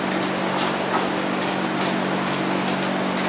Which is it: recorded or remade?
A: recorded